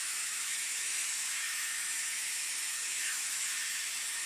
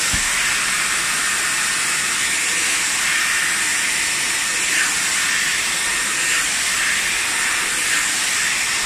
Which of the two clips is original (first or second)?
second